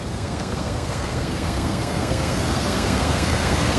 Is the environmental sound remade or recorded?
remade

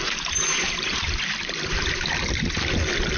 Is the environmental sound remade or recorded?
recorded